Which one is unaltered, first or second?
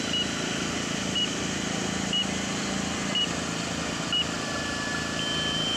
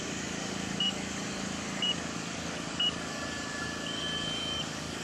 first